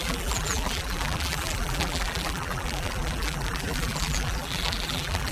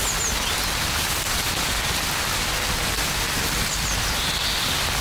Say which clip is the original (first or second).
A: second